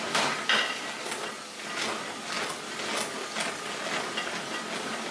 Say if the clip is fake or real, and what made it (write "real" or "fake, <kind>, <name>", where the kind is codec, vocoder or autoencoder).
real